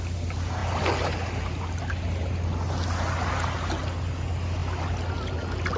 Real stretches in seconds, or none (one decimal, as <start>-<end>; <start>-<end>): 0.0-5.8